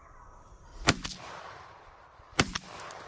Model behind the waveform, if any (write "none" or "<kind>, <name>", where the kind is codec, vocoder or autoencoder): none